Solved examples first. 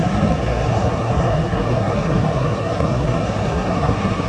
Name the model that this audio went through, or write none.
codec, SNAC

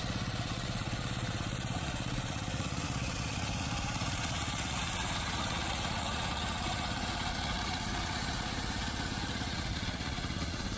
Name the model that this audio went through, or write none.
vocoder, Vocos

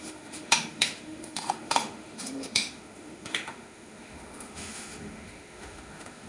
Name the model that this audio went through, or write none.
autoencoder, DAC-VAE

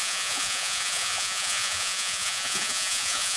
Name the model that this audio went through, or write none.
vocoder, Vocos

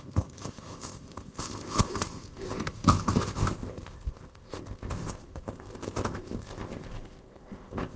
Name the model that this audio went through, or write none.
codec, ZipCodec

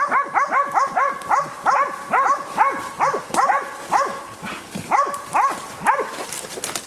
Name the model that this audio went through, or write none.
none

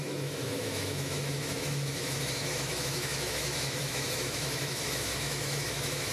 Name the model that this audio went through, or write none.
autoencoder, DAC-VAE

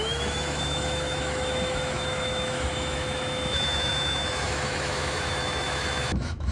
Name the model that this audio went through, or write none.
autoencoder, DAC-VAE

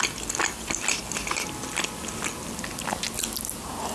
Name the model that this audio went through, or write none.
none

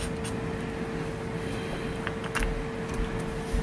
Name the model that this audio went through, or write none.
none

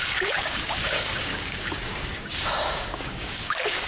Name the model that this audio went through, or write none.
codec, DAC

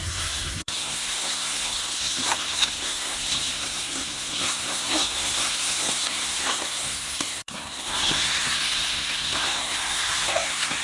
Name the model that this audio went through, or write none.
codec, SNAC